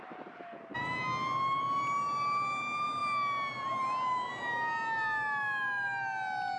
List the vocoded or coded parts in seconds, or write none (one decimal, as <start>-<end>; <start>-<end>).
none